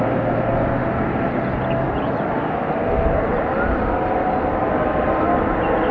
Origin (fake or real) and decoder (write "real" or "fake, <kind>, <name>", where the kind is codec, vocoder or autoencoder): real